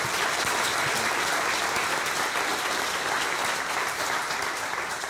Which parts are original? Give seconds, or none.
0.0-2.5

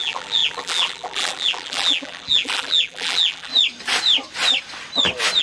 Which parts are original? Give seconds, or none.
3.5-5.4

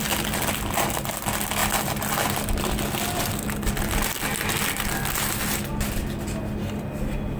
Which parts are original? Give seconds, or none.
0.0-7.4

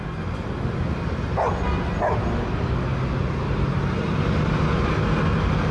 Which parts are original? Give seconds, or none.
0.0-5.7

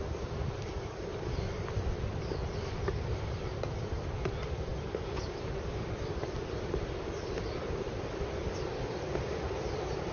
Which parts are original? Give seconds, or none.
none

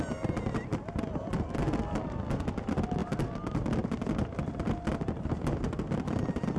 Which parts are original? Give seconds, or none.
3.0-4.9

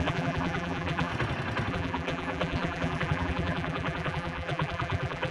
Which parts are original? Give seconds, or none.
1.1-1.7